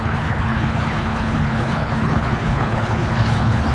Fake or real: fake